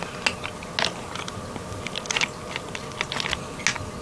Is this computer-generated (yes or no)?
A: no